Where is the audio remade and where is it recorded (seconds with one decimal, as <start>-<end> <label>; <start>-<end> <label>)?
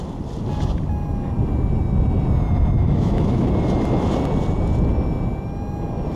0.0-2.8 recorded; 2.8-3.5 remade; 3.5-6.2 recorded